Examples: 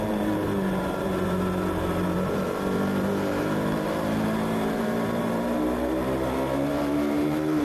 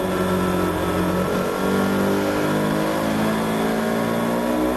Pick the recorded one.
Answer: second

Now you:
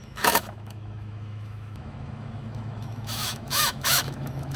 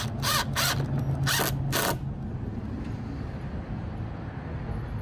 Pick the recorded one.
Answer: second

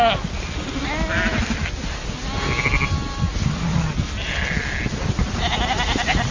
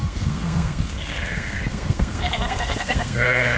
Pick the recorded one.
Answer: first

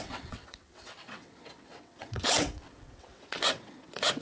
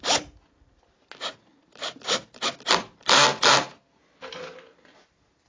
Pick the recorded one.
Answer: second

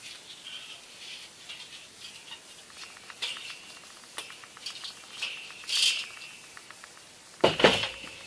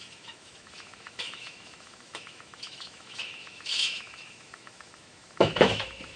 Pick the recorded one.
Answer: first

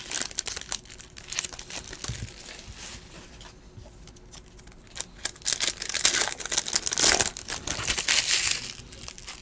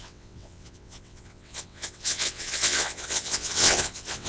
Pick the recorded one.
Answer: first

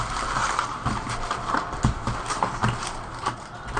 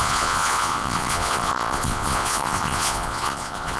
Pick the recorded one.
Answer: first